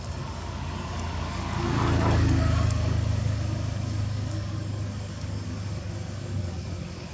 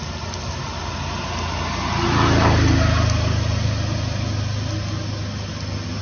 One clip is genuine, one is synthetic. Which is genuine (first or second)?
second